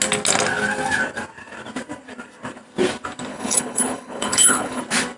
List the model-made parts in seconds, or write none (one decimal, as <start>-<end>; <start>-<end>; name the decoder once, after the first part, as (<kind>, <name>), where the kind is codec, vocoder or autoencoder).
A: 3.3-4.8 (codec, HILCodec)